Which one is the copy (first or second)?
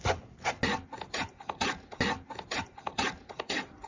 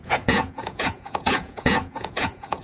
second